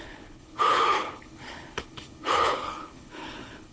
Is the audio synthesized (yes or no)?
yes